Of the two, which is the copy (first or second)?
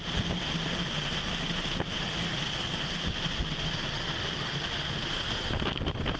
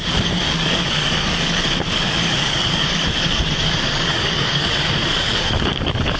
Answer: second